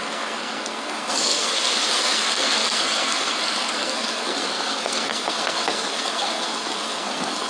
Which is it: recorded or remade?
remade